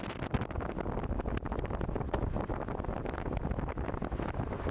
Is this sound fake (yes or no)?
no